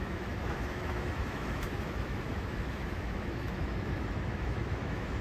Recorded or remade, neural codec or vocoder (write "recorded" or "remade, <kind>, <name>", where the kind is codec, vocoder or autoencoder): remade, autoencoder, DAC-VAE